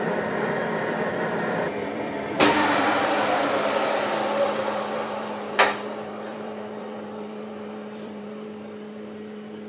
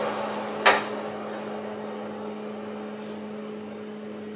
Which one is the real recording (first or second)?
second